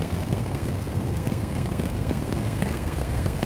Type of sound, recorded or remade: remade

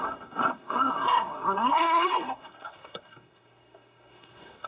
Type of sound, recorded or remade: remade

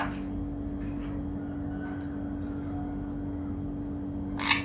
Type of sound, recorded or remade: recorded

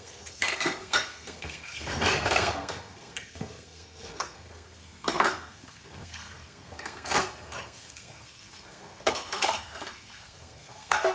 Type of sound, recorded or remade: remade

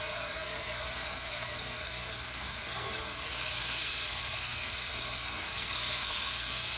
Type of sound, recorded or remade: remade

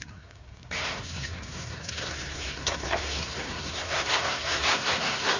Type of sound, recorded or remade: remade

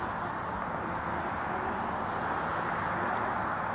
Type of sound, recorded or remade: recorded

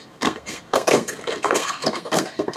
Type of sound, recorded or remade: remade